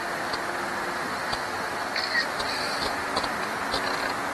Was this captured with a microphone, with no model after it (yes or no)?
yes